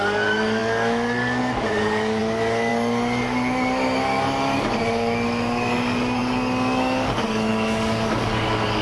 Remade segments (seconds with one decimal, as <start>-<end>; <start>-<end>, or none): 0.0-8.8